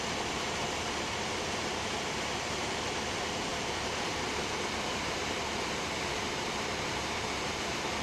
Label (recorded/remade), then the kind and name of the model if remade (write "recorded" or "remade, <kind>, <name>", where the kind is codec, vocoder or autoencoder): remade, vocoder, BigVGAN v2